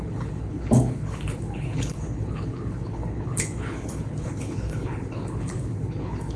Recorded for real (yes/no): no